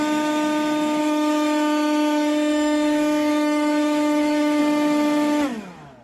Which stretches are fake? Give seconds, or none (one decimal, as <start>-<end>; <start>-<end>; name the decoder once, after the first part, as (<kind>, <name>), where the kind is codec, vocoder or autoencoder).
1.0-4.6 (autoencoder, DAC-VAE)